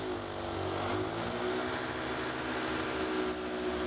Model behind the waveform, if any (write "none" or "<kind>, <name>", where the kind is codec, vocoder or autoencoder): none